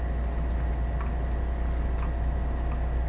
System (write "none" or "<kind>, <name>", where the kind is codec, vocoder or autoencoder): none